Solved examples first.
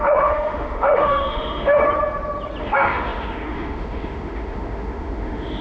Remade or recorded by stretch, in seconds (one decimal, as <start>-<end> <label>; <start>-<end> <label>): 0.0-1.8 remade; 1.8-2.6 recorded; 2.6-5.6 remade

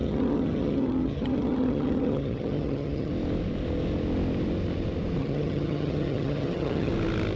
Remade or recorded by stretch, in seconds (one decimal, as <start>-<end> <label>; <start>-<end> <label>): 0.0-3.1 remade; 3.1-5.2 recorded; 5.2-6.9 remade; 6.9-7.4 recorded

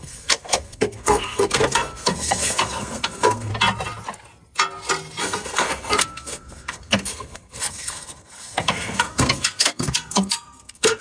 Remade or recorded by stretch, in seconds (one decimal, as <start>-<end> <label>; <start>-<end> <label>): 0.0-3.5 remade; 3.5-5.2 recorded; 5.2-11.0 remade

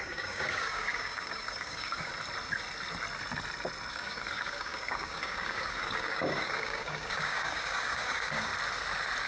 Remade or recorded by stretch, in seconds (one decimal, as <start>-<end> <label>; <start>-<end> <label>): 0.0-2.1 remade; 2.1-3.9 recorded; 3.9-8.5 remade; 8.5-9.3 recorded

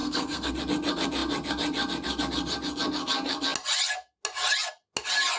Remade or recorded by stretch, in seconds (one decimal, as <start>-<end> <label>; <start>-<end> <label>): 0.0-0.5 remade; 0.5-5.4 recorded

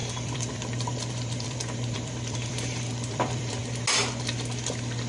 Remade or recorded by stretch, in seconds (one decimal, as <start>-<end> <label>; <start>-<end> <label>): 0.0-3.6 remade; 3.6-5.1 recorded

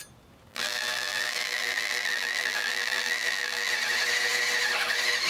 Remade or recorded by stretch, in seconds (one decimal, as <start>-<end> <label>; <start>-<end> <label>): 0.0-0.5 recorded; 0.5-3.7 remade; 3.7-5.3 recorded

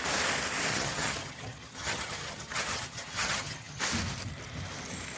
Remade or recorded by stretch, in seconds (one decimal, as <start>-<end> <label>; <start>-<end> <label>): 0.0-0.7 recorded; 0.7-3.8 remade; 3.8-5.2 recorded